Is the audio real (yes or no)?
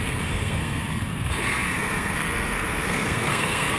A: no